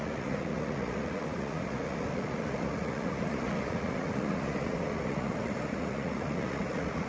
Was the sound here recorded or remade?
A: remade